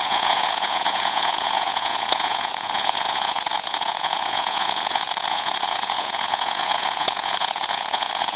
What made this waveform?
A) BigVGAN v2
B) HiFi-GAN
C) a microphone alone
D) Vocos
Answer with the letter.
D